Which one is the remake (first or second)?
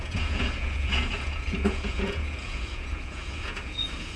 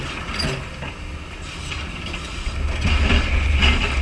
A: first